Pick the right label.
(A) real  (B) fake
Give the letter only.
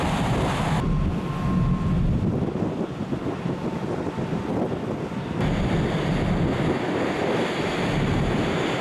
A